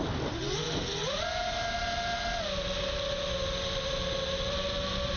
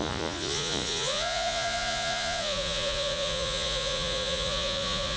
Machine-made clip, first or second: second